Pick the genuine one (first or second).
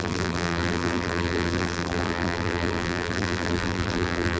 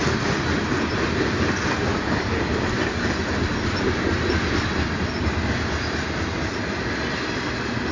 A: second